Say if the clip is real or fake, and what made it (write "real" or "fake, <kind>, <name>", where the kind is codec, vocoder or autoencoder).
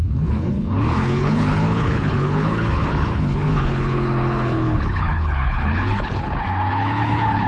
fake, codec, HILCodec